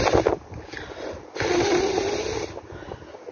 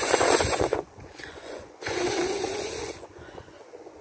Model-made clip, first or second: second